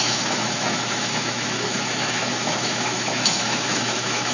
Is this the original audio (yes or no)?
no